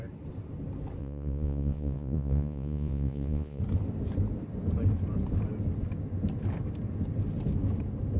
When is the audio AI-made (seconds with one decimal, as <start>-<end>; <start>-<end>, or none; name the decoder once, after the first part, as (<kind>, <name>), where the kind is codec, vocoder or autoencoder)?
1.0-3.6 (vocoder, Vocos)